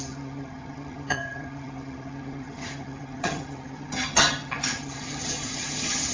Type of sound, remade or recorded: remade